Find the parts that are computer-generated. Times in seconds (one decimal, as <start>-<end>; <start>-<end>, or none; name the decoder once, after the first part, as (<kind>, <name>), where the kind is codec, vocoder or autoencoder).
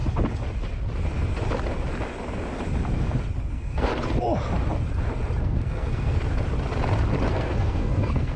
3.5-3.9 (codec, SNAC); 5.4-6.2; 7.3-8.4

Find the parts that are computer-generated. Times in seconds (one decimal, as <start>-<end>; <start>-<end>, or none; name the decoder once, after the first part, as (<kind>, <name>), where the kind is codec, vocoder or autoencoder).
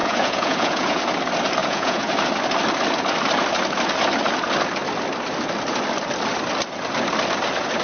0.0-1.0 (vocoder, Vocos); 1.6-2.1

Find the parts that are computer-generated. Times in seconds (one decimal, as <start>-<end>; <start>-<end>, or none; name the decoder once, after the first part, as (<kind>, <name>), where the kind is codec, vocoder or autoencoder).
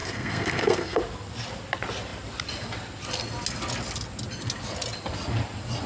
0.0-1.0 (codec, SNAC)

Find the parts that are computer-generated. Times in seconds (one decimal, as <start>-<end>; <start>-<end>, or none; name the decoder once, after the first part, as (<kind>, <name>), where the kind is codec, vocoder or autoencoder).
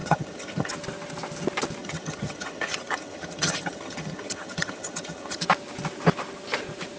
0.0-0.7 (vocoder, HiFi-GAN); 1.8-5.4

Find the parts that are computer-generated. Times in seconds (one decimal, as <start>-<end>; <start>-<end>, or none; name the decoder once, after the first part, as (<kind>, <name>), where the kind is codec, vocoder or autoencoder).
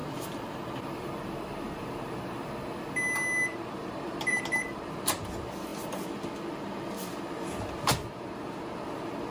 0.0-1.1 (vocoder, BigVGAN v2); 3.5-4.8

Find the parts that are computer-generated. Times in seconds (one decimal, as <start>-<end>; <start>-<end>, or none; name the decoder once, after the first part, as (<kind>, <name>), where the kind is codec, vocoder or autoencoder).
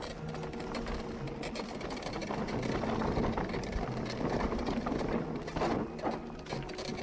none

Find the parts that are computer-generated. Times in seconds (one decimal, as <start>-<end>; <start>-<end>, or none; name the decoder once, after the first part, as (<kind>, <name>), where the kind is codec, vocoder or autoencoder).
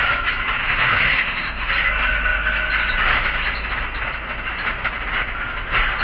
0.6-1.7 (autoencoder, DAC-VAE)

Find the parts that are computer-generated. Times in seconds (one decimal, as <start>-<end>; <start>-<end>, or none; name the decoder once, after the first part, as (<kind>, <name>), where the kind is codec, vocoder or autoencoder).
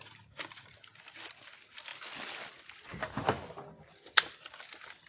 none